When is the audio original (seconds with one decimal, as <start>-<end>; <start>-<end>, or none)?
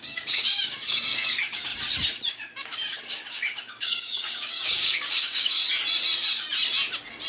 1.7-2.3; 5.6-7.3